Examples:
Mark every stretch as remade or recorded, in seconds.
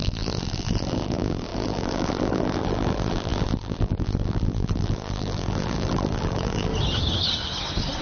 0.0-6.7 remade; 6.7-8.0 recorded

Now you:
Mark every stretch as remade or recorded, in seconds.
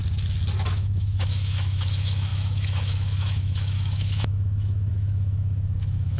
0.0-0.7 recorded; 0.7-6.2 remade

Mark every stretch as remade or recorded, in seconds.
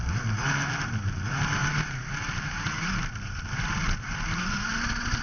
0.0-5.2 recorded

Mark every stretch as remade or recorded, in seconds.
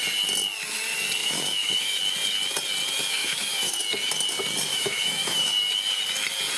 0.0-1.2 recorded; 1.2-2.0 remade; 2.0-3.2 recorded; 3.2-3.7 remade; 3.7-4.7 recorded; 4.7-5.5 remade; 5.5-6.6 recorded